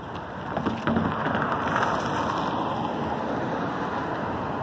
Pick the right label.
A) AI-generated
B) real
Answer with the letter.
B